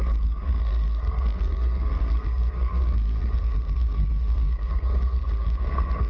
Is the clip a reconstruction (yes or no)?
yes